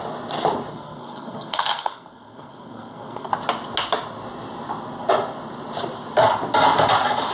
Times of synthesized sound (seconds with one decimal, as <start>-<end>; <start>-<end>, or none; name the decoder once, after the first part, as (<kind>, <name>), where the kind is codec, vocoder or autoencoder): 0.7-3.3 (codec, SNAC)

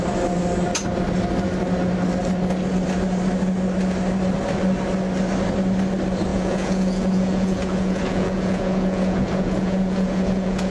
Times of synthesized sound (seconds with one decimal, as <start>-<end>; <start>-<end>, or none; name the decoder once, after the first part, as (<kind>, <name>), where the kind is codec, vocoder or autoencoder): 6.3-10.7 (vocoder, Vocos)

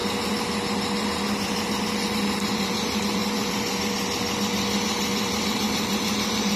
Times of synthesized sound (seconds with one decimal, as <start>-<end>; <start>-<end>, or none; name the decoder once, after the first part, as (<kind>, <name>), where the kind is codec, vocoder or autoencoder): 1.9-6.6 (vocoder, BigVGAN v2)

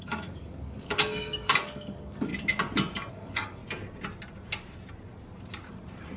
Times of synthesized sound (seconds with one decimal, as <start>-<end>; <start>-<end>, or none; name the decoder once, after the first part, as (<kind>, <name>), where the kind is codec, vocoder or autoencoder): 0.0-2.3 (codec, DAC); 3.1-3.6

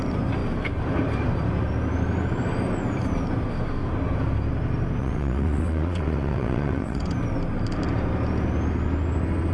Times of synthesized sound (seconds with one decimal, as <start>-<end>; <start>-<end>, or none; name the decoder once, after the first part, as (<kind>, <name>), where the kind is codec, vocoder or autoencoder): 5.0-7.0 (vocoder, WaveNeXt)